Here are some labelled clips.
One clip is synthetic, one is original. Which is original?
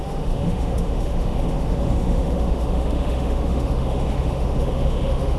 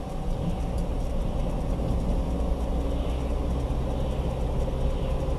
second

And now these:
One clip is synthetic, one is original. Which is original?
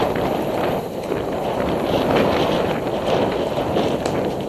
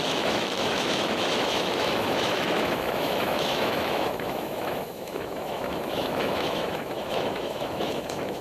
first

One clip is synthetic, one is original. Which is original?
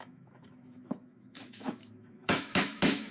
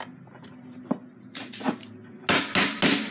second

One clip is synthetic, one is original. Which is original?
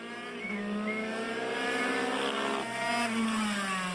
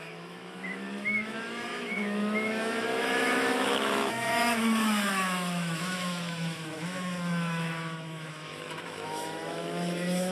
first